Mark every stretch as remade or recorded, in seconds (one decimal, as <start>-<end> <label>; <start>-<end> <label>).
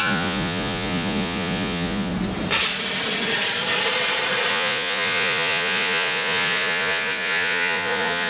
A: 0.0-2.1 remade; 2.1-4.5 recorded; 4.5-8.3 remade